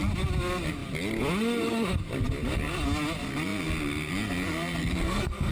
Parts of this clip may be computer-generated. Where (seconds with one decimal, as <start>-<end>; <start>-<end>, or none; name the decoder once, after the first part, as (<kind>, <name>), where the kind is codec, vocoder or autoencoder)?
4.8-5.5 (codec, SNAC)